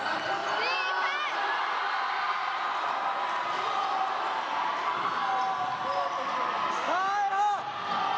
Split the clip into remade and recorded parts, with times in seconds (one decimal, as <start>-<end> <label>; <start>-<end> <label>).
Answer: 0.0-8.2 recorded